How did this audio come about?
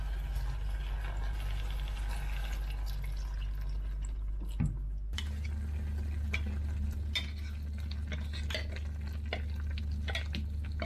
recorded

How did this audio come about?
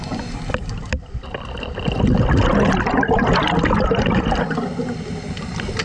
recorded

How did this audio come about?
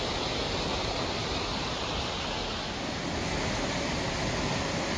recorded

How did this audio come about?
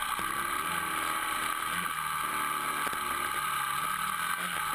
recorded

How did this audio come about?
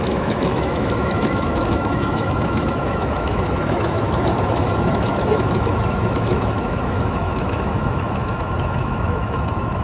remade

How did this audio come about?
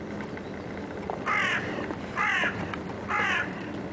recorded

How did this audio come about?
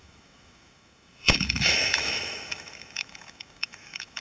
remade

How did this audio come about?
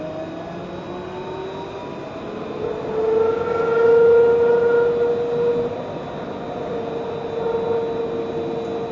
recorded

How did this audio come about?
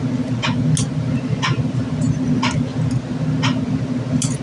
recorded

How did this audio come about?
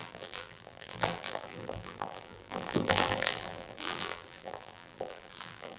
remade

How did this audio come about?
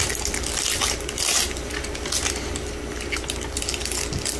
recorded